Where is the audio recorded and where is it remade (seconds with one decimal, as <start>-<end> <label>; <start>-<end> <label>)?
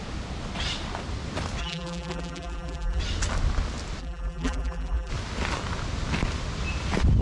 0.0-1.6 recorded; 1.6-3.0 remade; 3.0-4.0 recorded; 4.0-5.1 remade; 5.1-7.2 recorded